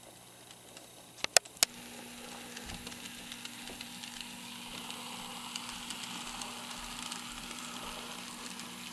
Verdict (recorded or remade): recorded